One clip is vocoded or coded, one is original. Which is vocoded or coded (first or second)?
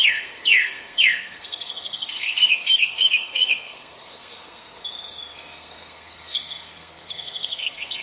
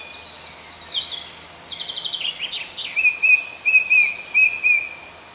first